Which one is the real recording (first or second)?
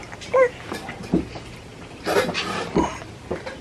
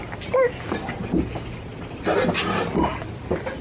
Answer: second